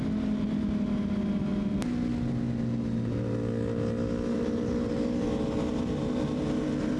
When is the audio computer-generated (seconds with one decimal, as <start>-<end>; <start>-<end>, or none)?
none